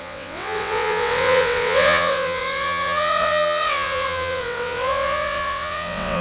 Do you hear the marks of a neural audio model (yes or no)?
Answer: yes